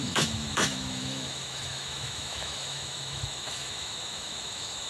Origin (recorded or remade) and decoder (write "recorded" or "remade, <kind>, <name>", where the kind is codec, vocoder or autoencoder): remade, autoencoder, DAC-VAE